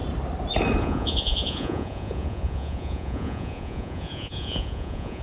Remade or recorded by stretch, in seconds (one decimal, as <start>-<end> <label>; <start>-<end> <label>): 0.0-0.8 recorded; 0.8-5.2 remade